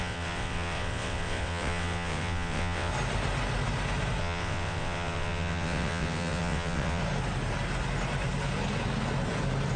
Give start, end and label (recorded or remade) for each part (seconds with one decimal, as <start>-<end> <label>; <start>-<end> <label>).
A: 0.0-2.9 remade; 2.9-4.2 recorded; 4.2-7.0 remade; 7.0-9.8 recorded